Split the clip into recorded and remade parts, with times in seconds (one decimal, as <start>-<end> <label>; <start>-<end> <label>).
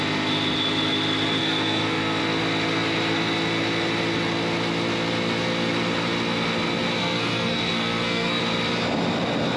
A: 0.0-1.4 recorded; 1.4-2.2 remade; 2.2-7.0 recorded; 7.0-8.4 remade; 8.4-9.6 recorded